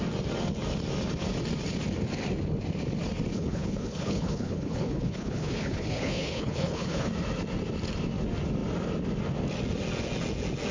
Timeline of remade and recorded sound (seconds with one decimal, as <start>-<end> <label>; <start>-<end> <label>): 0.0-3.3 recorded; 3.3-7.1 remade; 7.1-10.7 recorded